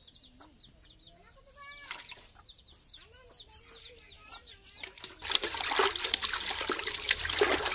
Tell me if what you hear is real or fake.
real